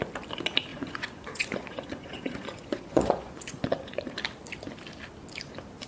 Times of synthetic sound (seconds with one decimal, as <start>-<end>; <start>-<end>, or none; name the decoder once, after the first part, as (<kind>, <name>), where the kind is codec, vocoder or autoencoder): 0.7-4.2 (vocoder, Vocos)